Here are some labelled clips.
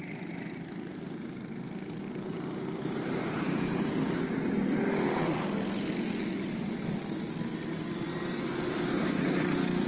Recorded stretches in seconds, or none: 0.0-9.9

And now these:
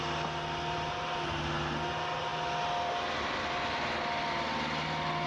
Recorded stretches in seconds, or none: 0.0-5.3

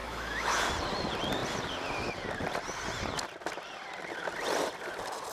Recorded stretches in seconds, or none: 0.7-5.3

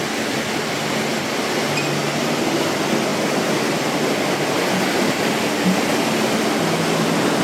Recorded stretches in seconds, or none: 0.0-7.4

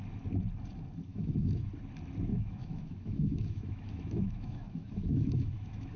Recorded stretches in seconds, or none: 0.0-1.1; 1.7-2.3

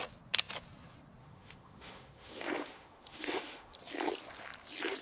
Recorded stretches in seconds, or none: 0.0-1.2; 3.8-5.0

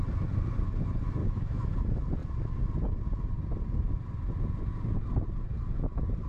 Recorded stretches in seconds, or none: 0.0-1.2; 1.7-6.3